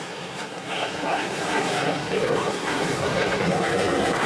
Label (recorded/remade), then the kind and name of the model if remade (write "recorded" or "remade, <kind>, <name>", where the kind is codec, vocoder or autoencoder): remade, codec, SNAC